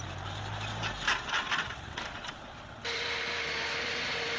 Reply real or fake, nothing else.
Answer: real